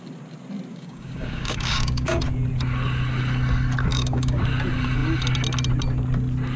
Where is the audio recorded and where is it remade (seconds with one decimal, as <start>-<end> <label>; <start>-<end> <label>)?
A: 0.0-0.7 recorded; 0.7-2.2 remade; 2.2-3.9 recorded; 3.9-4.4 remade; 4.4-6.6 recorded